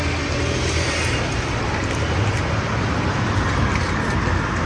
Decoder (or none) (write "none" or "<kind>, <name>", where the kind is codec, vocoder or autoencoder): none